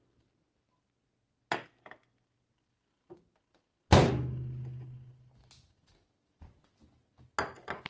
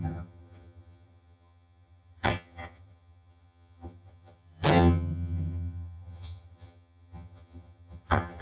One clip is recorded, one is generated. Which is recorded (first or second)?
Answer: first